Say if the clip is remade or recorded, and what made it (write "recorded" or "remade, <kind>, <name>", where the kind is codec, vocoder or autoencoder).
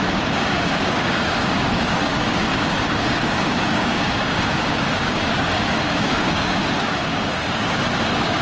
remade, codec, DAC